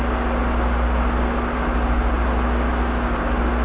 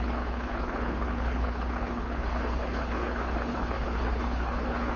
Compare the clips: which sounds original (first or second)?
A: first